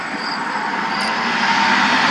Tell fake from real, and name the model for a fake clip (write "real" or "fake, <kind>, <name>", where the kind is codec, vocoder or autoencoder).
real